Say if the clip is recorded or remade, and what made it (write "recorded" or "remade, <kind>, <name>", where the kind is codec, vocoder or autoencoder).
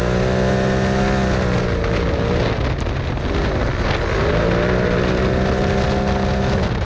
recorded